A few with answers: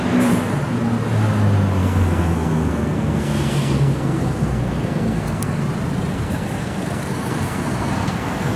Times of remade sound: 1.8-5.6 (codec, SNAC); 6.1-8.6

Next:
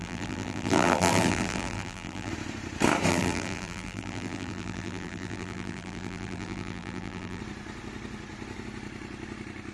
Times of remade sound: 0.0-2.3 (vocoder, BigVGAN v2); 3.1-7.4

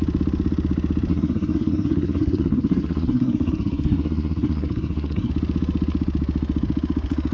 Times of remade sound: 1.1-5.3 (codec, SNAC)

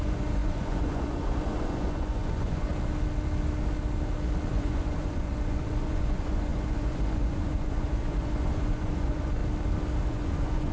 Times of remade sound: 0.0-2.7 (vocoder, Vocos); 4.5-9.4; 10.0-10.7

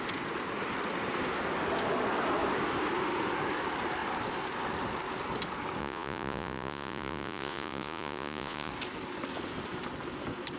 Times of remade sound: 5.8-8.7 (vocoder, Vocos)

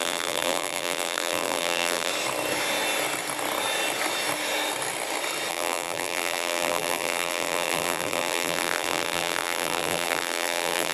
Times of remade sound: 0.0-2.1 (vocoder, BigVGAN v2); 5.5-10.9

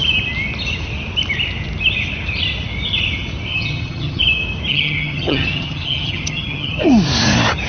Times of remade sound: 3.5-4.2 (vocoder, HiFi-GAN); 4.7-6.8